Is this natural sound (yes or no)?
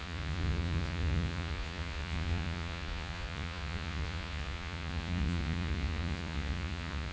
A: no